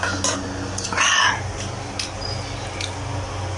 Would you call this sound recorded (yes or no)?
yes